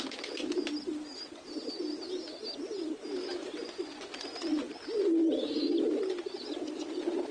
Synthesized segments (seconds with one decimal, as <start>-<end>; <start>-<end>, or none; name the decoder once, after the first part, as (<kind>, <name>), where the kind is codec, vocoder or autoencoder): 3.6-4.7 (vocoder, Vocos)